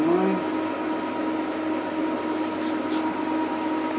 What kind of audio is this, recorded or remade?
recorded